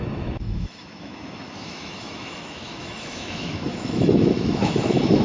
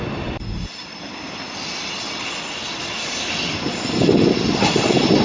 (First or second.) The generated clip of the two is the first